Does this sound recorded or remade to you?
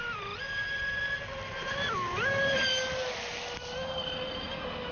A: recorded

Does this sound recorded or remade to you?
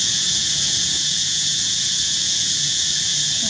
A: remade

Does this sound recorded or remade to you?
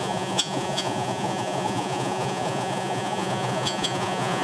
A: remade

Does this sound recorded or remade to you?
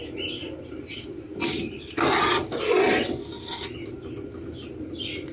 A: recorded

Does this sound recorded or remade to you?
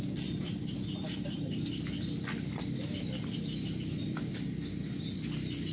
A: recorded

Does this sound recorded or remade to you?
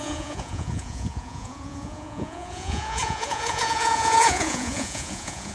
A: remade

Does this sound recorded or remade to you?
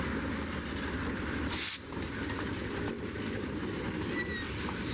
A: recorded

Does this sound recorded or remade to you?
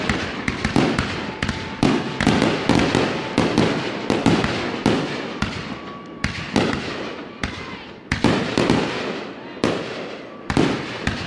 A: recorded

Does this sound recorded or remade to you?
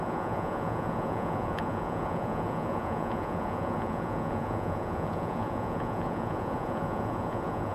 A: remade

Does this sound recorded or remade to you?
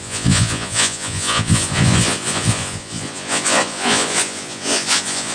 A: remade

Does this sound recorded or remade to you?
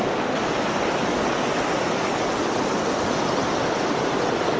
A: recorded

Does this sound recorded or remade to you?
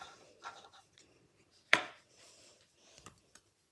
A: remade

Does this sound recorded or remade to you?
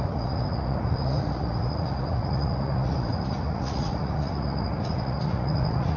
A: remade